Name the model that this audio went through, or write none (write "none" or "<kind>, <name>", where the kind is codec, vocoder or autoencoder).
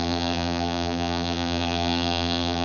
vocoder, BigVGAN v2